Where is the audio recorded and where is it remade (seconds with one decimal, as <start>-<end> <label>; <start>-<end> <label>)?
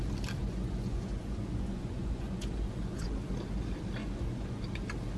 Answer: 0.0-0.4 recorded; 0.4-3.3 remade; 3.3-4.0 recorded; 4.0-4.6 remade; 4.6-5.2 recorded